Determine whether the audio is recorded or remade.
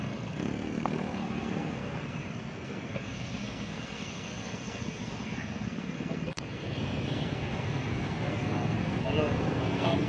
remade